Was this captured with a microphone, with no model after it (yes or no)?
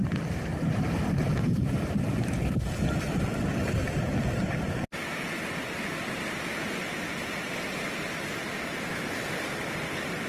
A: yes